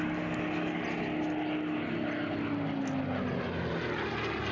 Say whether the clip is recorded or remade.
recorded